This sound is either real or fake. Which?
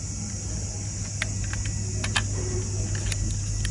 real